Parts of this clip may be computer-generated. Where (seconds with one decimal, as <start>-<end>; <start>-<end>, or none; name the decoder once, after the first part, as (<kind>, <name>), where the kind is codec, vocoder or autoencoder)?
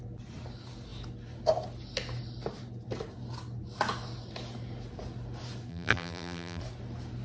5.7-6.6 (vocoder, BigVGAN v2)